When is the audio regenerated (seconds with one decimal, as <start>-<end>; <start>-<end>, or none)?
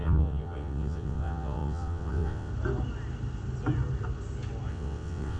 0.0-2.5; 4.7-5.4